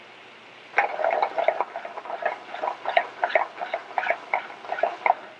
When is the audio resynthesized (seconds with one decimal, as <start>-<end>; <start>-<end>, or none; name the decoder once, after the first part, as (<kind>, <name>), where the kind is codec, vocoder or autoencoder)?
none